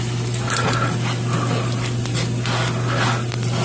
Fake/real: real